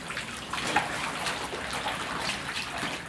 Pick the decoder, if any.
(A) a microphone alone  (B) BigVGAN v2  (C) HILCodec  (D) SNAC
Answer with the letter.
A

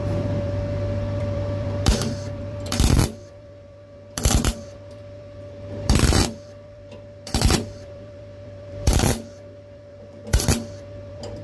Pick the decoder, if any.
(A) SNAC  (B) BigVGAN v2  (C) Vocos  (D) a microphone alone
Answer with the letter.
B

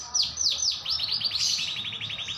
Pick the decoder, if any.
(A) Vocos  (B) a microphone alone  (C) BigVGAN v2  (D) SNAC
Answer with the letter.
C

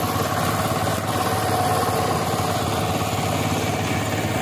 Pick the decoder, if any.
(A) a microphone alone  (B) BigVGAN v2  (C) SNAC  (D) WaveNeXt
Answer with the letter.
A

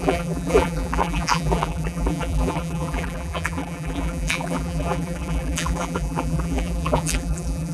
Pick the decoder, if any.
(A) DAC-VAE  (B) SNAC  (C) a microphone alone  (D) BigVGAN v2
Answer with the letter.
D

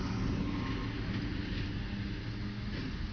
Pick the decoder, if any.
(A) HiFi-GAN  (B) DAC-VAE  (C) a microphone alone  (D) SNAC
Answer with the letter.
C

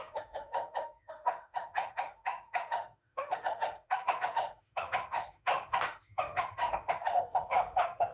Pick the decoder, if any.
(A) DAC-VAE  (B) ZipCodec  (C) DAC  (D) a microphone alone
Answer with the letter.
A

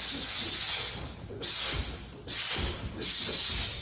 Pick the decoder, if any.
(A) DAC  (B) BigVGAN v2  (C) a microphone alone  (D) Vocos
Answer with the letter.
C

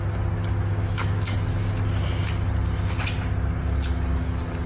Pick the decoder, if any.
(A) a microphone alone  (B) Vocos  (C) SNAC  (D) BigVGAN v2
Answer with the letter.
A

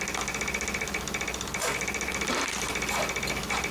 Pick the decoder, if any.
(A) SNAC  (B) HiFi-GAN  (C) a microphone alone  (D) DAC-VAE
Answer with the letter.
C